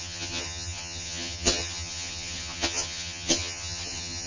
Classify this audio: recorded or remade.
remade